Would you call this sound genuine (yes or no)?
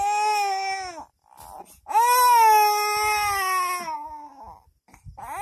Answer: yes